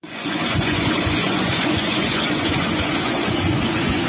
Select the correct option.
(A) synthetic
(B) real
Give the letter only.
A